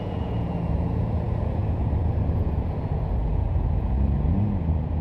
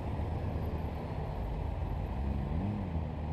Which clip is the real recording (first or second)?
second